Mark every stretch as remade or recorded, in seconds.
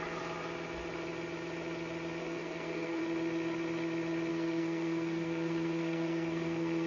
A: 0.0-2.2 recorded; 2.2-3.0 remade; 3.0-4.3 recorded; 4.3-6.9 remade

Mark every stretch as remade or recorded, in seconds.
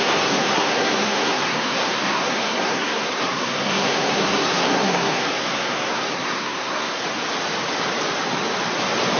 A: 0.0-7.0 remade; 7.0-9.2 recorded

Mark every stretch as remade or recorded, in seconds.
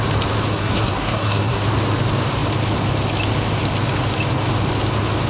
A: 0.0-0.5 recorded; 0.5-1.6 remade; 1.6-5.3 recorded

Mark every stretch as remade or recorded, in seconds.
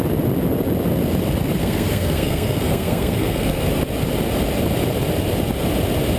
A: 0.0-1.6 recorded; 1.6-3.6 remade; 3.6-6.2 recorded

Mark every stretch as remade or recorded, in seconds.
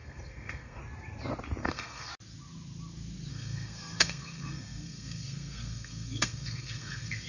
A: 0.0-0.8 remade; 0.8-1.6 recorded; 1.6-2.1 remade; 2.1-3.3 recorded; 3.3-7.3 remade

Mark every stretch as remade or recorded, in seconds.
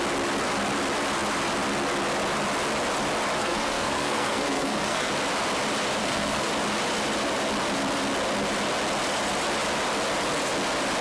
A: 0.0-3.4 recorded; 3.4-5.1 remade; 5.1-6.0 recorded; 6.0-6.5 remade; 6.5-11.0 recorded